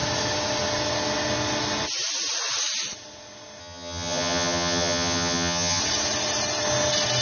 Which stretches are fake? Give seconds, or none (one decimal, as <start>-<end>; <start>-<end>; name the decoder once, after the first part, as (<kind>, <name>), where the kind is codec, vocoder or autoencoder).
3.6-5.8 (vocoder, HiFi-GAN)